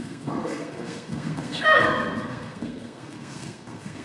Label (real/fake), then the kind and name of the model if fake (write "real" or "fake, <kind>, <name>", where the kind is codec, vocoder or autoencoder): fake, codec, SNAC